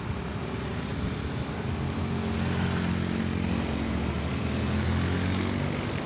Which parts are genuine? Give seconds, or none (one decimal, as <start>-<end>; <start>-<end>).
0.0-6.1